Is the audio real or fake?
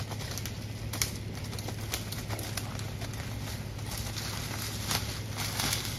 real